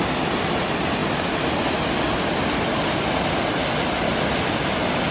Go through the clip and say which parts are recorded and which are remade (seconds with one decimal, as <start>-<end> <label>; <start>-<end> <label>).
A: 0.0-5.1 recorded